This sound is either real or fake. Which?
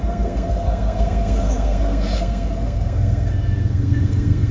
fake